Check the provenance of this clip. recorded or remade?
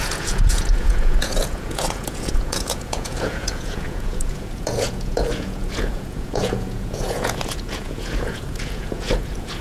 remade